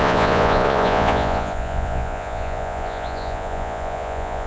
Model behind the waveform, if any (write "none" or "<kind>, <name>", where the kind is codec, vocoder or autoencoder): vocoder, Vocos